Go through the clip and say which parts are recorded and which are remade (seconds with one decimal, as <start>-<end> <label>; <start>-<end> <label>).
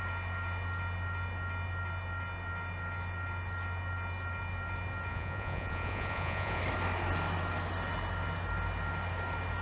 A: 0.0-5.1 recorded; 5.1-6.6 remade; 6.6-9.6 recorded